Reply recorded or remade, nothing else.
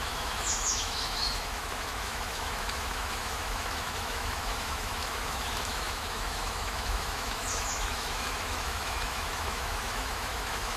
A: remade